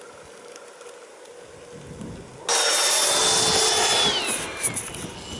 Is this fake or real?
real